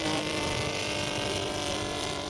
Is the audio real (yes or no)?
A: no